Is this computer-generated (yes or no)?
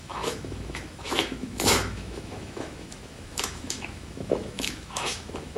yes